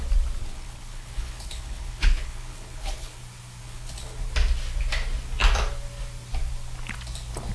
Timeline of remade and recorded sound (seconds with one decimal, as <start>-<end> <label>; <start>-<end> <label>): 0.0-0.4 recorded; 0.4-3.2 remade; 3.2-3.6 recorded; 3.6-4.2 remade; 4.2-7.5 recorded